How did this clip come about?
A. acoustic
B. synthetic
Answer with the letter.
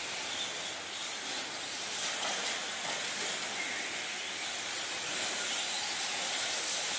A